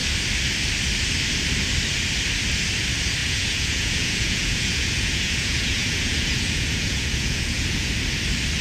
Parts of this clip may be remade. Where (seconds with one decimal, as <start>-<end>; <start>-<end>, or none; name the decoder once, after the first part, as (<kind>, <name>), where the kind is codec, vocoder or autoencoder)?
3.2-7.9 (vocoder, Vocos)